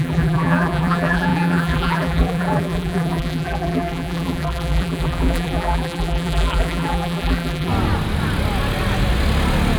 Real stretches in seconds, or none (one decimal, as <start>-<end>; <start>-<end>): 7.7-9.8